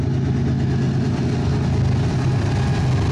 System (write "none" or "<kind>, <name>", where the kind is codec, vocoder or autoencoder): none